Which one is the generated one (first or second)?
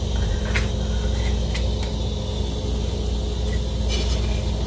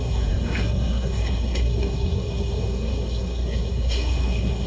second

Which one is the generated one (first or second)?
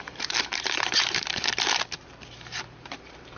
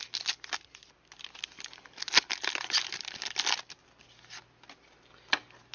first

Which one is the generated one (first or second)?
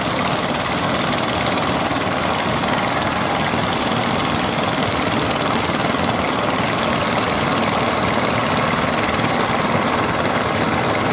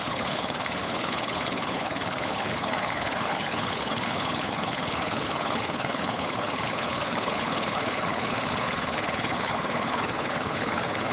second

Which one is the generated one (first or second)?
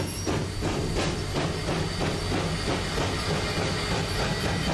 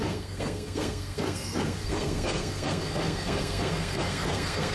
second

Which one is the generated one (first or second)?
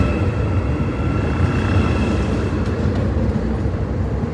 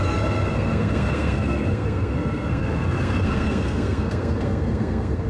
second